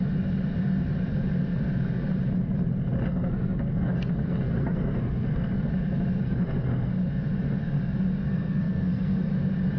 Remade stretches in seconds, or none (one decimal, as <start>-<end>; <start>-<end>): 3.1-5.7; 6.2-6.9; 8.3-9.3